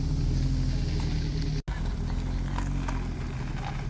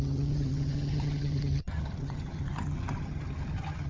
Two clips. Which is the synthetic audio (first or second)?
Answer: second